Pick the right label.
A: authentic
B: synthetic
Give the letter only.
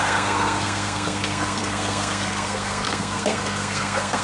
B